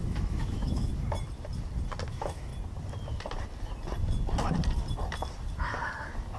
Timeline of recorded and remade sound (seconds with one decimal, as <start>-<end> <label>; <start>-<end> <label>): 0.0-0.9 remade; 0.9-2.1 recorded; 2.1-2.5 remade; 2.5-6.4 recorded